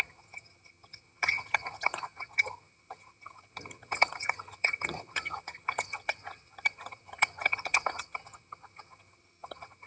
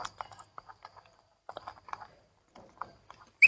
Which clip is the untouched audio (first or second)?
second